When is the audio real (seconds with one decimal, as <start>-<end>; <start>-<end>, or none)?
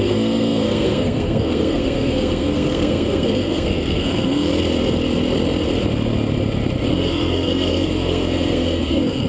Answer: 4.5-6.9